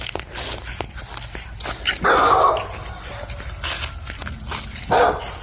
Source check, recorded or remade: recorded